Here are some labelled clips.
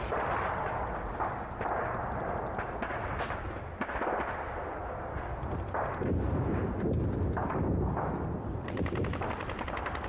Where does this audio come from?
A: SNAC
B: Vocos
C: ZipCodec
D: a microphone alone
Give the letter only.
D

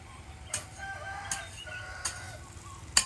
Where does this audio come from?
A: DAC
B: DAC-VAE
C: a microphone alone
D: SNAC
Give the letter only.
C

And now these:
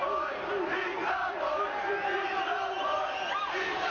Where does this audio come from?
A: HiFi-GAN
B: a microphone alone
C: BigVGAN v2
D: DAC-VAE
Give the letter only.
B